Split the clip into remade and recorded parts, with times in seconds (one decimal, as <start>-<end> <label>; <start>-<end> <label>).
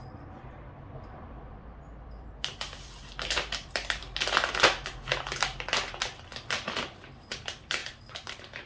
0.0-7.8 remade; 7.8-8.7 recorded